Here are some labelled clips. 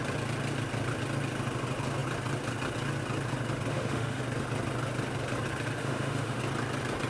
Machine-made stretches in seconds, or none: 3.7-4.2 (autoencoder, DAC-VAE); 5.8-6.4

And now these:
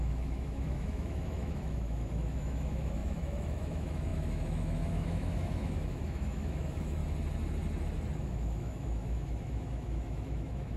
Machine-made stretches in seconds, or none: 0.0-7.0 (autoencoder, DAC-VAE); 8.2-10.8

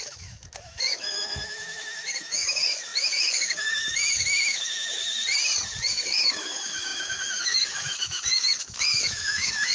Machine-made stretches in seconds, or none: 0.0-5.0 (autoencoder, DAC-VAE); 5.9-9.7

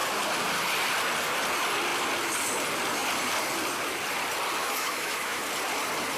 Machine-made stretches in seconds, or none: 4.6-5.4 (autoencoder, DAC-VAE)

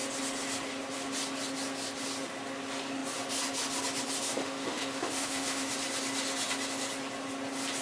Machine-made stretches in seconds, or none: 4.3-5.7 (autoencoder, DAC-VAE)

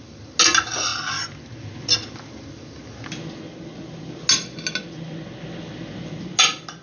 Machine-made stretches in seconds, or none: none

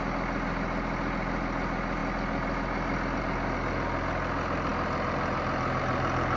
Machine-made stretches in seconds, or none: none